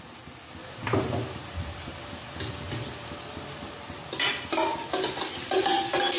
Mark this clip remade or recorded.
recorded